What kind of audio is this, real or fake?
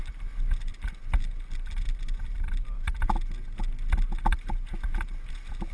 real